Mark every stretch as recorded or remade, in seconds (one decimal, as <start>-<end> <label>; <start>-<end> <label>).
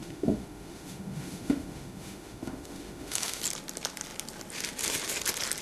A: 0.0-3.4 remade; 3.4-5.6 recorded